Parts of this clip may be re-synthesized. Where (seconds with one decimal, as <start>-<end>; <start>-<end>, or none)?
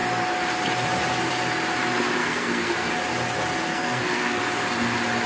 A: 2.2-2.9; 3.7-4.4